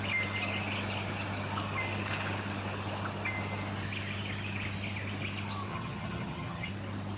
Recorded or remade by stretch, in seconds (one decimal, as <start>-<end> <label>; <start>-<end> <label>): 0.0-5.7 recorded; 5.7-6.7 remade; 6.7-7.2 recorded